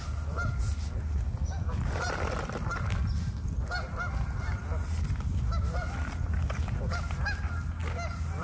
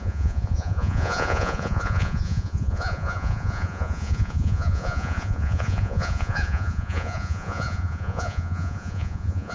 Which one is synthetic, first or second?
second